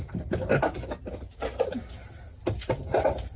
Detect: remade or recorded recorded